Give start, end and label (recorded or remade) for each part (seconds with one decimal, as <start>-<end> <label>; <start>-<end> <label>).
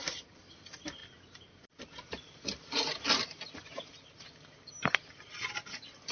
0.0-6.1 remade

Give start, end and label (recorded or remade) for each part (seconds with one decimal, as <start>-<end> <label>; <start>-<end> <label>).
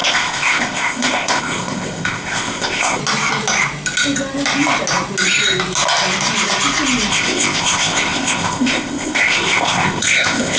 0.0-3.0 remade; 3.0-7.1 recorded; 7.1-10.6 remade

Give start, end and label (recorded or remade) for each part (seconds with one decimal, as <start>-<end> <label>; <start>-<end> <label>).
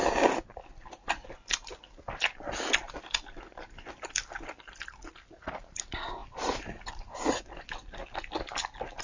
0.0-9.0 recorded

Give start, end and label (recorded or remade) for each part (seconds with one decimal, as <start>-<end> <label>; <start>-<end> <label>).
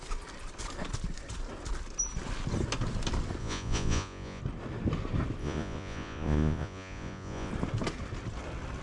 0.0-3.4 recorded; 3.4-4.4 remade; 4.4-5.4 recorded; 5.4-7.5 remade; 7.5-8.8 recorded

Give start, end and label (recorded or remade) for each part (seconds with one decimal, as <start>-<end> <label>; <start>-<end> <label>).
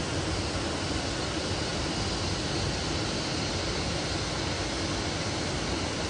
0.0-6.1 recorded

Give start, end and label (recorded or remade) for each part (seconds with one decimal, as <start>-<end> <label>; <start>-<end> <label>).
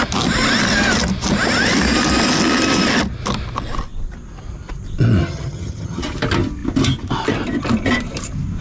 0.0-5.2 recorded; 5.2-6.0 remade; 6.0-8.6 recorded